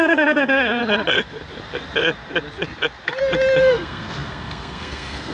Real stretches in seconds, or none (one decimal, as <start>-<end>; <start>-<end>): 0.8-3.6